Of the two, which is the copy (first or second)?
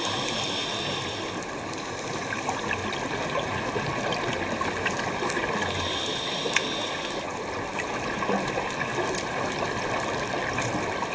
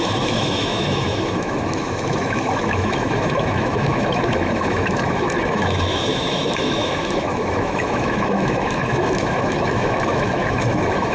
second